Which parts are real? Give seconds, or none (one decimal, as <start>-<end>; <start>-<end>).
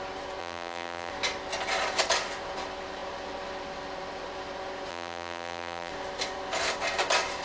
0.0-0.4; 1.1-4.9; 5.9-7.4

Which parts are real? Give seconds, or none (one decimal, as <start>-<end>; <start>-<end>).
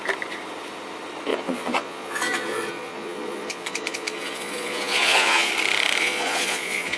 0.0-1.3; 5.5-6.0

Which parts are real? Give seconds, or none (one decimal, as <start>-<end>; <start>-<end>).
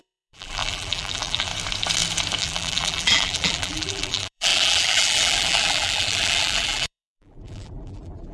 1.5-2.4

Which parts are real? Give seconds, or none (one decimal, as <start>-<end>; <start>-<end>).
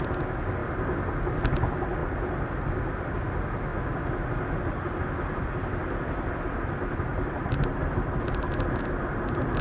0.0-2.0; 2.6-7.1; 8.5-9.6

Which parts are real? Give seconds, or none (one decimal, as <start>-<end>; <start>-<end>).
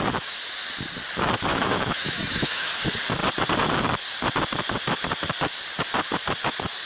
0.0-1.5; 2.7-6.9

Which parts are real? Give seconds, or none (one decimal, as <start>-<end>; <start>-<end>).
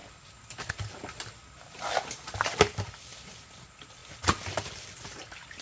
0.0-5.6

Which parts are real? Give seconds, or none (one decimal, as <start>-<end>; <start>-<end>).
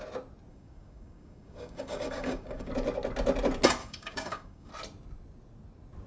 0.0-0.5; 2.7-3.8; 4.7-6.1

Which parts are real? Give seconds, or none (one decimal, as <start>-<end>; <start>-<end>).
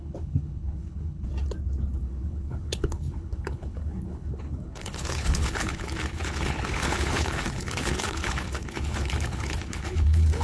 1.3-2.0